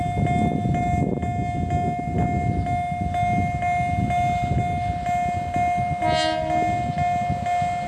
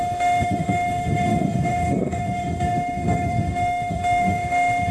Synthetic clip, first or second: second